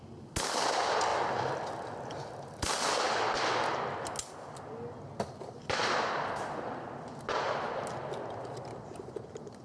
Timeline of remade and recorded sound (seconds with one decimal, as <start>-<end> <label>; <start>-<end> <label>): 0.0-9.6 recorded